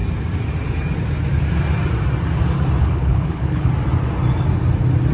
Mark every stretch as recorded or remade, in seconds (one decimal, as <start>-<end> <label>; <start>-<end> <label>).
0.0-2.8 recorded; 2.8-3.7 remade; 3.7-5.1 recorded